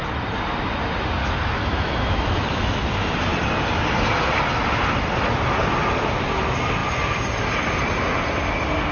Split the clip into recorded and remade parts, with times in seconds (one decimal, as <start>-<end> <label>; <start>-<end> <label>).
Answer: 0.0-1.2 recorded; 1.2-2.8 remade; 2.8-8.9 recorded